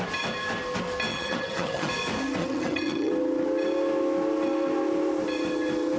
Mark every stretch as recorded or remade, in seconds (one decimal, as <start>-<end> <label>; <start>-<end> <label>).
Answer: 0.0-1.1 recorded; 1.1-1.9 remade; 1.9-2.4 recorded; 2.4-3.1 remade; 3.1-6.0 recorded